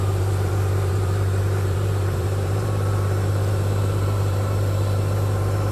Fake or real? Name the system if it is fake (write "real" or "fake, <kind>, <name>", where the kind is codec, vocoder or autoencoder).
fake, vocoder, BigVGAN v2